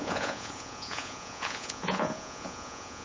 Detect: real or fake fake